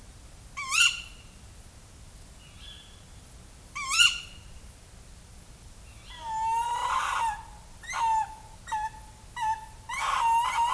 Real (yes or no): yes